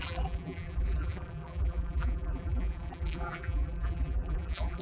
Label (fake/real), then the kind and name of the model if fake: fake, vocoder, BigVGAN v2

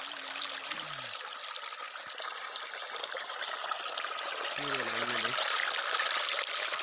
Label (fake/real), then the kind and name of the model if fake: real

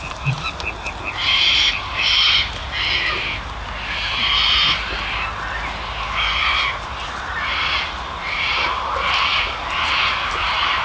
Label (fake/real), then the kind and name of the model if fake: real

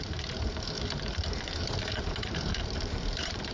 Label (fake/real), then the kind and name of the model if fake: fake, vocoder, BigVGAN v2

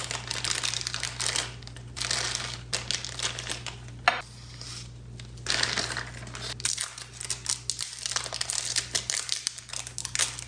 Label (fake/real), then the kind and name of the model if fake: real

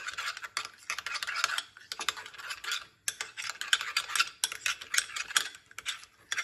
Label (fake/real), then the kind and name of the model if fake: real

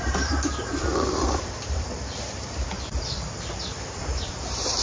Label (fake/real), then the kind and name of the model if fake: fake, vocoder, BigVGAN v2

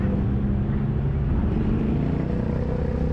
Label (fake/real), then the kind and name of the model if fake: real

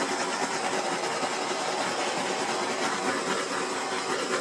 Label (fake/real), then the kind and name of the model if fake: fake, vocoder, BigVGAN v2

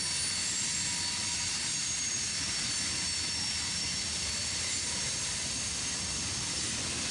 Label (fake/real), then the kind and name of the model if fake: real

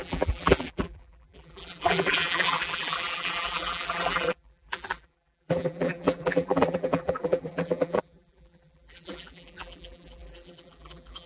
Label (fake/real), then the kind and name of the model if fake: fake, vocoder, BigVGAN v2